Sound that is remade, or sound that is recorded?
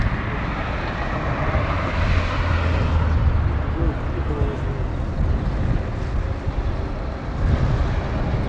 recorded